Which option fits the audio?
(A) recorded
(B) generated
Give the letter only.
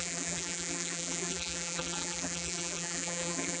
B